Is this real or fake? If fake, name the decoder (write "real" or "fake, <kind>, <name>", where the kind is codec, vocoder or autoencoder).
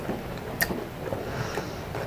real